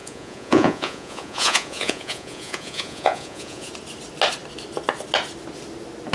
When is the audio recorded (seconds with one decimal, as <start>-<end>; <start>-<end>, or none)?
3.7-6.1